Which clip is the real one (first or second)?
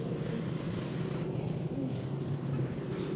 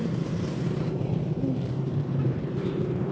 first